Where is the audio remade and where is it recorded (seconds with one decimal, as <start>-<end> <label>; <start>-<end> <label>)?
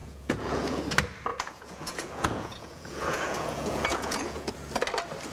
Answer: 0.0-0.8 remade; 0.8-1.3 recorded; 1.3-4.5 remade; 4.5-5.3 recorded